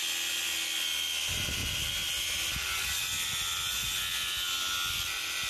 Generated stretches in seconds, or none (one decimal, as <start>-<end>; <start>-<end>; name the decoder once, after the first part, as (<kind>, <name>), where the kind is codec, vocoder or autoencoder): none